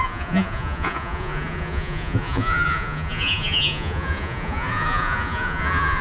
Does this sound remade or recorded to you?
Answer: remade